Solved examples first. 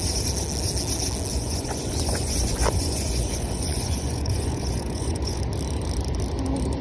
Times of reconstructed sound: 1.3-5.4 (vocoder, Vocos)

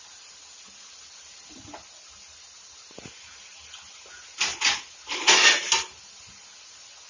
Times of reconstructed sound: none

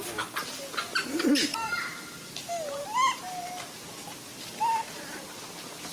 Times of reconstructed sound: none

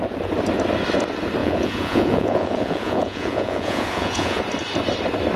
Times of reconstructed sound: 1.4-4.4 (vocoder, Vocos)

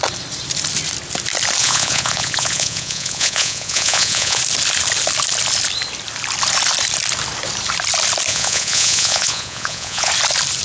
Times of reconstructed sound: 1.6-4.4 (vocoder, Vocos); 8.3-10.1

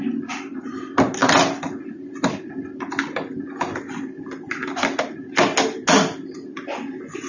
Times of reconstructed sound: none